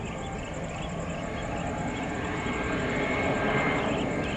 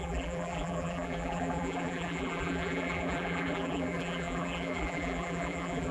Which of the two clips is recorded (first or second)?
first